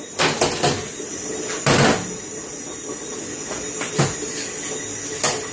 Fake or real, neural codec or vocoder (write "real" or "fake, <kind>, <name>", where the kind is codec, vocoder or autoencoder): real